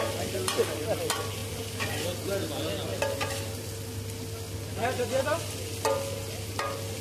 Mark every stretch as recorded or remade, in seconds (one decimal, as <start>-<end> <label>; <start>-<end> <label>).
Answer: 0.0-7.0 recorded